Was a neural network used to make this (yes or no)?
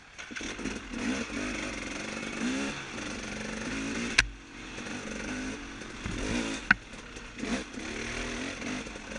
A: no